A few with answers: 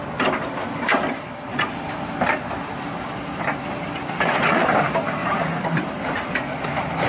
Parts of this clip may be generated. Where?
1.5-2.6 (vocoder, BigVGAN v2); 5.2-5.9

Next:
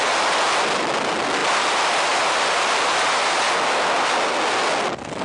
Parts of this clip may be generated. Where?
none

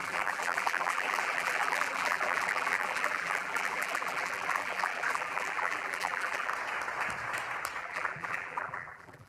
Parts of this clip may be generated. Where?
0.0-6.5 (vocoder, BigVGAN v2); 7.8-9.3

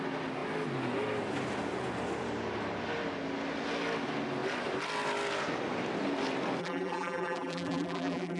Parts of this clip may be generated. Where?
6.6-8.4 (vocoder, BigVGAN v2)

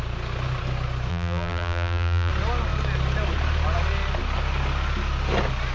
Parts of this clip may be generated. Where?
1.1-2.3 (vocoder, BigVGAN v2)

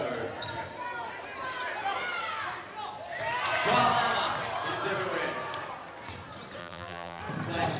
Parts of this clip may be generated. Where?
6.6-7.2 (vocoder, BigVGAN v2)

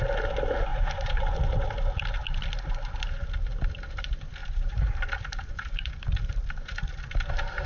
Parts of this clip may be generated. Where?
0.7-1.4 (vocoder, BigVGAN v2); 4.4-6.9

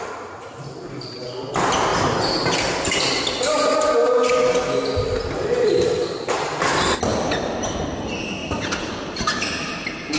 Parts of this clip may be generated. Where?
7.1-7.8 (vocoder, BigVGAN v2); 8.4-10.2